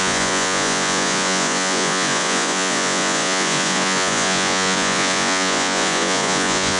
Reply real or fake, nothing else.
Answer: fake